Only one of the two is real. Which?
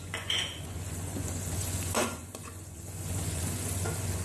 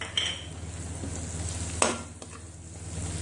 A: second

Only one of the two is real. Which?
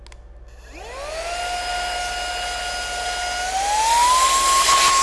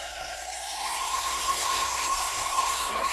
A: first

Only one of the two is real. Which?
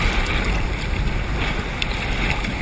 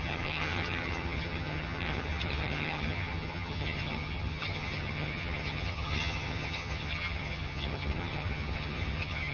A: first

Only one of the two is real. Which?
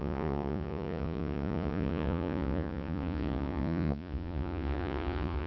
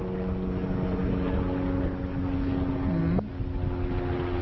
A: second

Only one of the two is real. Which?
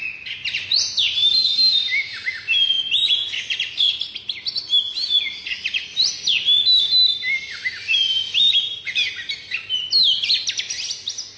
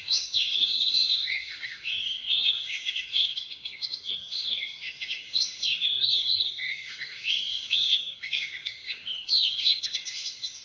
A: first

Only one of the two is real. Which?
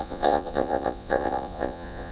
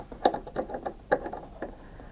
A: second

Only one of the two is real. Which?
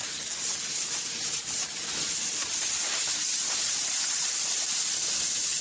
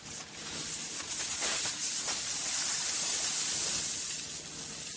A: second